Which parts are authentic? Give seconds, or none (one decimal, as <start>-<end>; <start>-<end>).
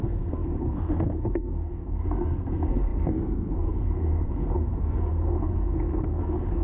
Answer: none